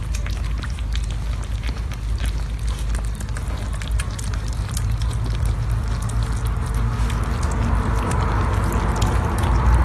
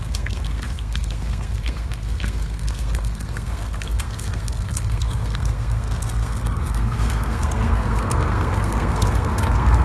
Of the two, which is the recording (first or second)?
first